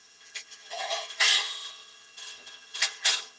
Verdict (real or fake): fake